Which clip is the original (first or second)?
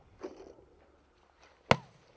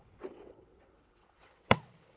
first